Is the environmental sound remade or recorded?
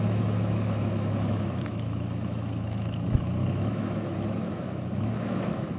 remade